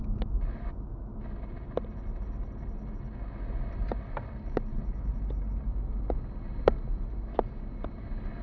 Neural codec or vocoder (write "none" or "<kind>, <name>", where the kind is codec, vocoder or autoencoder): none